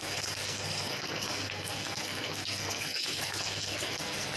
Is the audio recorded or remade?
remade